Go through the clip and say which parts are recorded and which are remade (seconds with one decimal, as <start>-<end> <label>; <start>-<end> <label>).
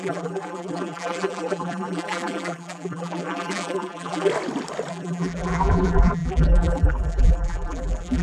0.0-4.3 remade; 4.3-4.9 recorded; 4.9-8.2 remade